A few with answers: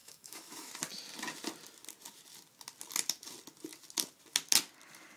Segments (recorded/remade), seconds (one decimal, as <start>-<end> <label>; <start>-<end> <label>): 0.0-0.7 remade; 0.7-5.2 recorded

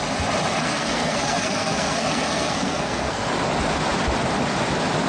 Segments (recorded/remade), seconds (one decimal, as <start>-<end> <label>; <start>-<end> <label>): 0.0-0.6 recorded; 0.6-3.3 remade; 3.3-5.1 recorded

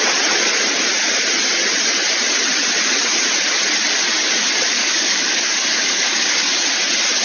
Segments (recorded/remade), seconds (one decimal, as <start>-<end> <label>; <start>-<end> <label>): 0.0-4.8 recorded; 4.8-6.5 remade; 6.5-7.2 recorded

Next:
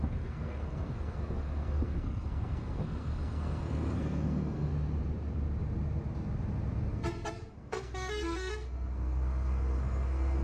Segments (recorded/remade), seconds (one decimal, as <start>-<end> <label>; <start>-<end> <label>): 0.0-4.7 remade; 4.7-6.9 recorded; 6.9-10.4 remade

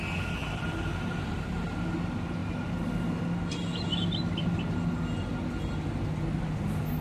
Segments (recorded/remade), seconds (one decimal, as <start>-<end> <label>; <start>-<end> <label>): 0.0-7.0 recorded

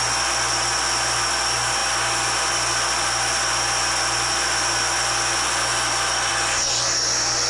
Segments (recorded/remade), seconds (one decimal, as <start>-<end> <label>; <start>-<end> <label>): 0.0-7.5 recorded